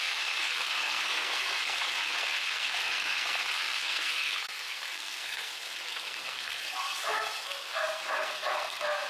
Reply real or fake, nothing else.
fake